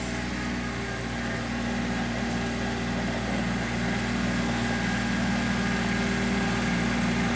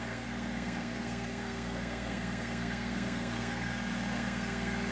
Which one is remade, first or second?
second